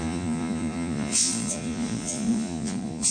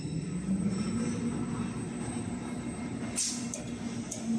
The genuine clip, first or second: second